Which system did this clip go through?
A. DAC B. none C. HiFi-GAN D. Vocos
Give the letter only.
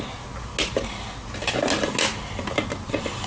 B